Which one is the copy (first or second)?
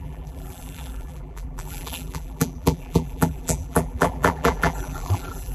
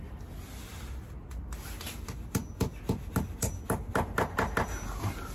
first